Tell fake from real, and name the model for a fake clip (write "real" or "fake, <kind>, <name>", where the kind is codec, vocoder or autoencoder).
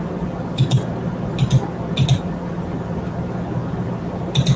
real